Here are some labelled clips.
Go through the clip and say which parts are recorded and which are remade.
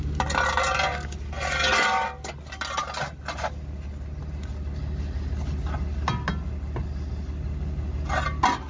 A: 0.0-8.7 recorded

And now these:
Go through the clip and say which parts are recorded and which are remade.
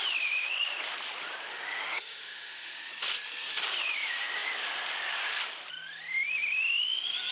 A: 0.0-1.5 recorded; 1.5-2.9 remade; 2.9-7.3 recorded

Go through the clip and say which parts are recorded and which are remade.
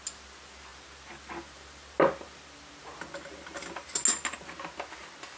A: 0.0-5.4 recorded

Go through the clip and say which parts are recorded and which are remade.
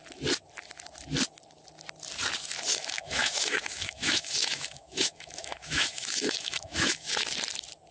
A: 0.0-2.7 recorded; 2.7-7.1 remade; 7.1-7.9 recorded